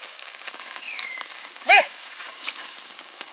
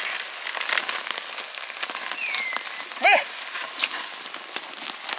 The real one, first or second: second